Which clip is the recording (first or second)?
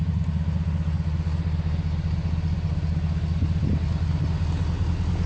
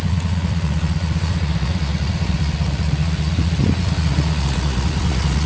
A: first